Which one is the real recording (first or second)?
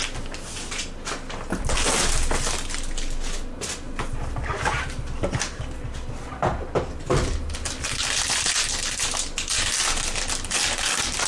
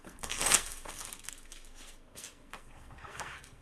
first